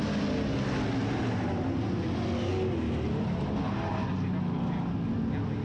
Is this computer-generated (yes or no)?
no